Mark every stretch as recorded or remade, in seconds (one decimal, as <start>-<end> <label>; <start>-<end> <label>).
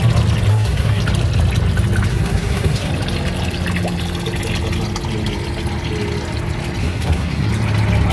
0.0-0.5 recorded; 0.5-1.0 remade; 1.0-2.1 recorded; 2.1-2.9 remade; 2.9-6.8 recorded; 6.8-7.5 remade; 7.5-8.1 recorded